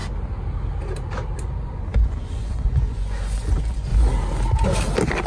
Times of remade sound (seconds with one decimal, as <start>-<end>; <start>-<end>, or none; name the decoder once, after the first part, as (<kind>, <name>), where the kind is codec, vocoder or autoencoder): 1.4-3.9 (vocoder, Vocos)